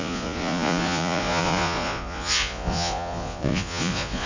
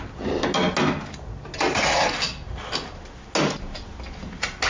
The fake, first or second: first